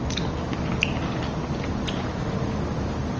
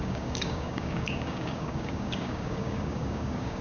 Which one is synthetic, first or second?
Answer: second